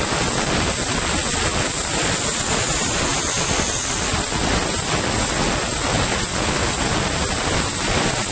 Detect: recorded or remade recorded